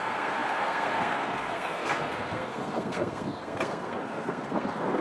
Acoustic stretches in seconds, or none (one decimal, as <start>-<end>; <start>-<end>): none